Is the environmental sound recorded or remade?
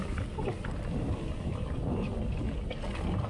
recorded